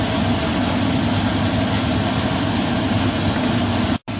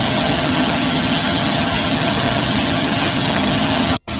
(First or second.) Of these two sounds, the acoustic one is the first